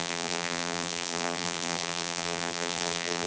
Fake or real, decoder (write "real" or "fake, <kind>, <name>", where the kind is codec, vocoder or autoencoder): fake, vocoder, BigVGAN v2